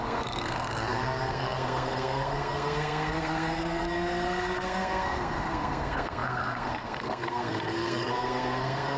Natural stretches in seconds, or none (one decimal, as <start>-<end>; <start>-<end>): none